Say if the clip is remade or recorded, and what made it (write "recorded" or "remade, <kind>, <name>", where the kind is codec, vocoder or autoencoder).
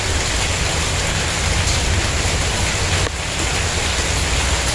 recorded